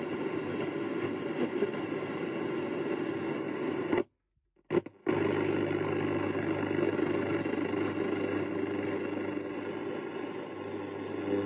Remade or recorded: recorded